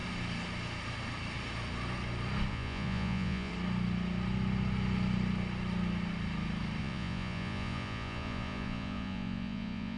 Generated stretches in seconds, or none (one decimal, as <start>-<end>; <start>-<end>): 2.5-3.5; 6.8-10.0